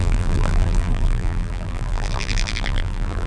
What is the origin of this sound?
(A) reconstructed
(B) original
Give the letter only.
A